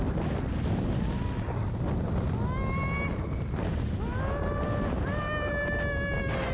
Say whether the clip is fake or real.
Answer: real